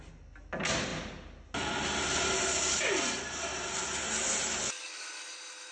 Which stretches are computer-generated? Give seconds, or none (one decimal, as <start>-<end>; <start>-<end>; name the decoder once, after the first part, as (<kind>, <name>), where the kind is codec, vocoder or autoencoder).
none

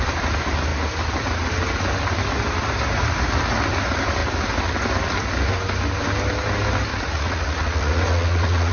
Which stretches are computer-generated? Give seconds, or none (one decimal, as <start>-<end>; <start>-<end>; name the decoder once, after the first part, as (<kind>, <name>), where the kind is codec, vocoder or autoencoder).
6.9-8.7 (vocoder, Vocos)

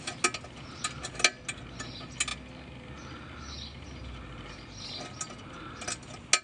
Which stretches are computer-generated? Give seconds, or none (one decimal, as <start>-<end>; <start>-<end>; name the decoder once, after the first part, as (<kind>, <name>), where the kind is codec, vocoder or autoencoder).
none

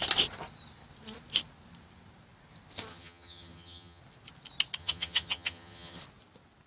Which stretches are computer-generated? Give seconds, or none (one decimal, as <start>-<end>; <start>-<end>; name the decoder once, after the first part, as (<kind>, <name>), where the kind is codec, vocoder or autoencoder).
2.9-4.0 (vocoder, HiFi-GAN); 4.8-6.0

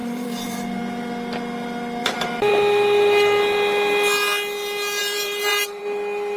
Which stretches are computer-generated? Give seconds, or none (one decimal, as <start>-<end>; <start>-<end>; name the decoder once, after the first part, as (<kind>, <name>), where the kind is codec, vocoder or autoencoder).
0.0-0.8 (vocoder, BigVGAN v2); 2.0-2.5; 5.0-5.8

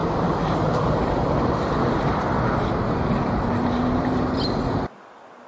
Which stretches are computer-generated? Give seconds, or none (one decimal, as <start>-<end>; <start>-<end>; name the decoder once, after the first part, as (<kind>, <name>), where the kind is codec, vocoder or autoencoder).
0.0-1.7 (vocoder, BigVGAN v2); 3.2-4.6

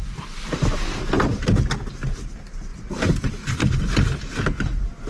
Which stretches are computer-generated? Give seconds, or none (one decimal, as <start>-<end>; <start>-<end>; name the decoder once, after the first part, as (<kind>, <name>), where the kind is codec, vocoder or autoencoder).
none